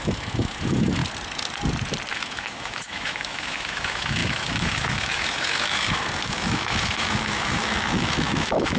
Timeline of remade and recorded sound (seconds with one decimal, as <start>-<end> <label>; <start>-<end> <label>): 0.0-1.0 remade; 1.0-2.1 recorded; 2.1-8.8 remade